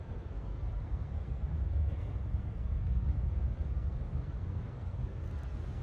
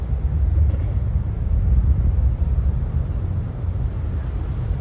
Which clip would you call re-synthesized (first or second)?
first